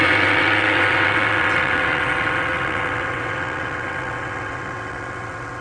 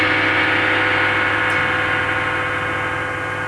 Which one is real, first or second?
second